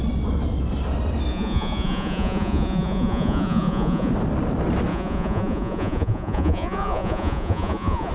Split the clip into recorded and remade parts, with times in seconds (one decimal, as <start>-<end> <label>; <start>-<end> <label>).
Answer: 0.0-1.3 recorded; 1.3-4.1 remade; 4.1-4.9 recorded; 4.9-8.1 remade